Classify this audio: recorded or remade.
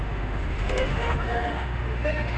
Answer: remade